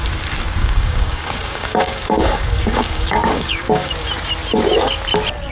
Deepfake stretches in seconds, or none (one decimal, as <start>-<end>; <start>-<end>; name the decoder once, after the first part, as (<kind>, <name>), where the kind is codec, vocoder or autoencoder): 0.6-3.9 (codec, DAC)